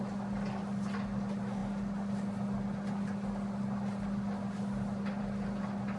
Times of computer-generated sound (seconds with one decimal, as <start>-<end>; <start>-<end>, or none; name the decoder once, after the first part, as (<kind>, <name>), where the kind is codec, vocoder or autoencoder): none